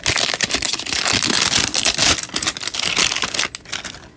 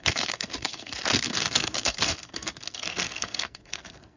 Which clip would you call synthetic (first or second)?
second